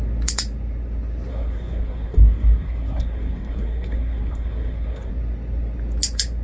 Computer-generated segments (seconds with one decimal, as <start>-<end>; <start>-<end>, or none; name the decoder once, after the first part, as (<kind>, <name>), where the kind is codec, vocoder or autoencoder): 1.3-5.1 (codec, SNAC)